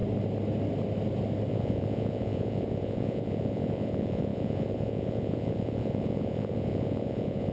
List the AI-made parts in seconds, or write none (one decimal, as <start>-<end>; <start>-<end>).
1.5-7.5